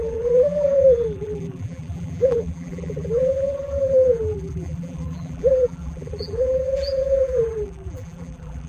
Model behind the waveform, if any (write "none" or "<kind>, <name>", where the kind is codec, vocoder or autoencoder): vocoder, BigVGAN v2